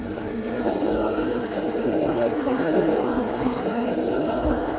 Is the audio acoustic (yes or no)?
no